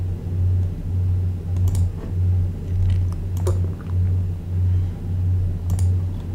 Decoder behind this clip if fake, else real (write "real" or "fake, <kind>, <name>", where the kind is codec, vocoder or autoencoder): real